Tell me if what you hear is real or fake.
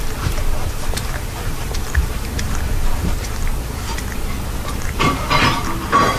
fake